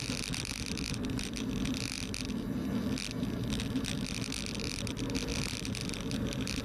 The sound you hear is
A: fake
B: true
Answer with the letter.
A